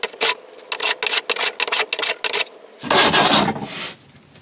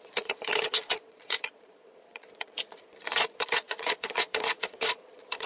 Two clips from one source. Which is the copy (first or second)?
second